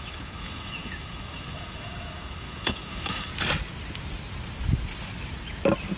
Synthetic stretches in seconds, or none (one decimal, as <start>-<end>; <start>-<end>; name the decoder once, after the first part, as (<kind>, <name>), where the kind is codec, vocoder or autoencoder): 0.0-3.3 (autoencoder, DAC-VAE)